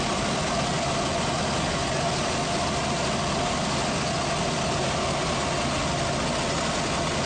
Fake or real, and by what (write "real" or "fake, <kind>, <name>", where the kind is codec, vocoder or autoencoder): real